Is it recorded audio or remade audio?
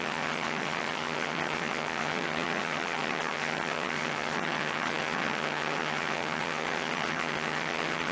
remade